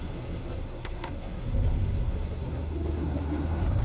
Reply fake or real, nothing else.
fake